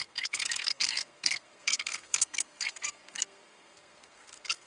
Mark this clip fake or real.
fake